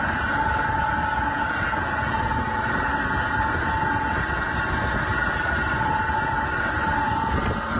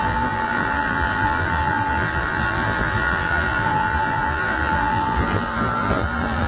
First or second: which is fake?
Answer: second